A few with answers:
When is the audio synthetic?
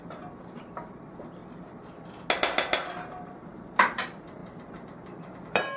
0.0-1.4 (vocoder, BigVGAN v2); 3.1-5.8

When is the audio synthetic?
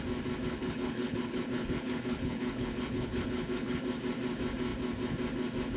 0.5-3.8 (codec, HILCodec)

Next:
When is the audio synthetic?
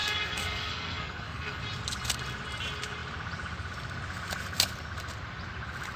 0.0-1.6 (codec, SNAC)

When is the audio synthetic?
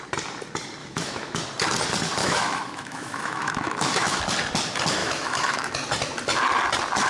0.8-1.4 (autoencoder, DAC-VAE); 2.2-4.2; 5.0-5.7